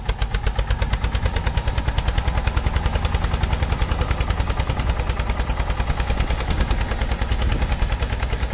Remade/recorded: recorded